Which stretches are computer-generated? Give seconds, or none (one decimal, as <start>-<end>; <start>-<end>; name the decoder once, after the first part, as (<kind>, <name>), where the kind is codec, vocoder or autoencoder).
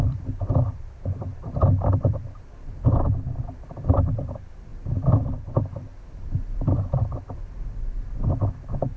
0.0-9.0 (vocoder, BigVGAN v2)